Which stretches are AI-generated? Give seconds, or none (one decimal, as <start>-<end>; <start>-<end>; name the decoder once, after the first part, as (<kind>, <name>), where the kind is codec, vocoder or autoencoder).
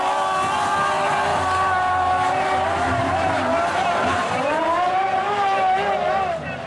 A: 1.3-5.3 (vocoder, BigVGAN v2)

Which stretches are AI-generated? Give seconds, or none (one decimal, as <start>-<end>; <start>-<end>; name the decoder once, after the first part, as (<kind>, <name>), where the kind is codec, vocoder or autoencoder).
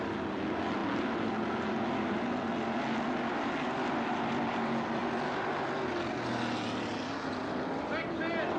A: none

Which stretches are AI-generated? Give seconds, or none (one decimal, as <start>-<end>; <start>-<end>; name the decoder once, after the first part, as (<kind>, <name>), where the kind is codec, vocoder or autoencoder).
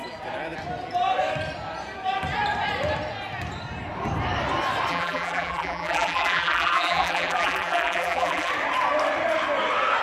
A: 4.9-8.5 (vocoder, BigVGAN v2)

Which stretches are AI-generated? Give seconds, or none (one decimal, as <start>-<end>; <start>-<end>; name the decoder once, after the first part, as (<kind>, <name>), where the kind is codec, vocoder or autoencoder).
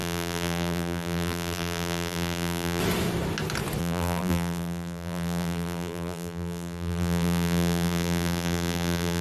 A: 0.0-2.8 (vocoder, BigVGAN v2); 3.8-9.2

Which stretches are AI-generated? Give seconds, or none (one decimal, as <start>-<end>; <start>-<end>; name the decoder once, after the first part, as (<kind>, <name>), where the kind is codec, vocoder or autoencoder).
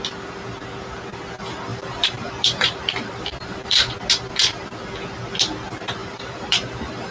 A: 1.7-3.9 (vocoder, BigVGAN v2); 6.0-7.1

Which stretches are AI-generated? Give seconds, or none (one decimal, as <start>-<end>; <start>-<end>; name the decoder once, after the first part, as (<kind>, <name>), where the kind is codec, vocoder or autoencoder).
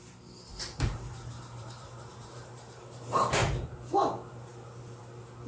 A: 0.5-2.8 (vocoder, BigVGAN v2)